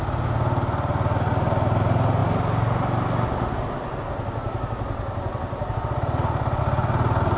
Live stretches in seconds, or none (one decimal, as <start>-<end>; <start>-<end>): 0.0-7.4